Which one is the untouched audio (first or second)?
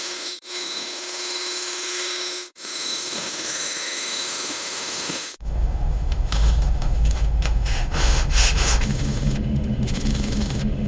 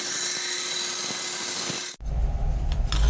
second